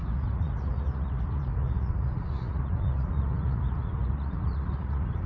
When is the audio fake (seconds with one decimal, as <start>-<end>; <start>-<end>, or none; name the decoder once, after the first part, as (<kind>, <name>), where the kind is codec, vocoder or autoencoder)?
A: 0.0-5.3 (vocoder, Vocos)